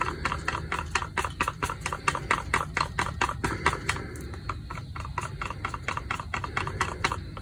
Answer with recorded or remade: recorded